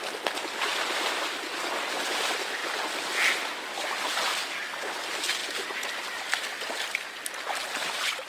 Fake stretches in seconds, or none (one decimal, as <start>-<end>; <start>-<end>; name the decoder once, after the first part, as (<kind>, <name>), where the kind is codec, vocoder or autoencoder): none